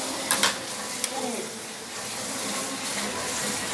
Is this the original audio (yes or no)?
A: yes